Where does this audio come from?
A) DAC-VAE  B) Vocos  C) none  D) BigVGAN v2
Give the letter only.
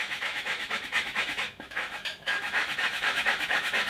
A